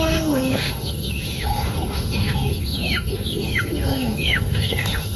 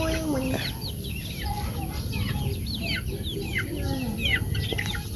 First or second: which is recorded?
second